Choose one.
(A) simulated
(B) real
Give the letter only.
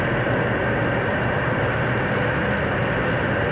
B